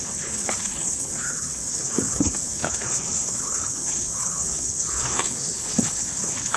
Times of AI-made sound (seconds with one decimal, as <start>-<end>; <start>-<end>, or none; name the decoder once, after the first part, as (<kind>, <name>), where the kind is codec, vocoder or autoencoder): 0.0-6.6 (codec, HILCodec)